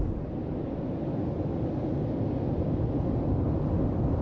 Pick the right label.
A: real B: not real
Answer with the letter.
A